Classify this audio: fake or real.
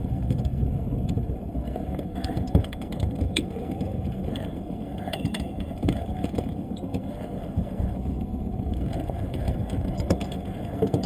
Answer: fake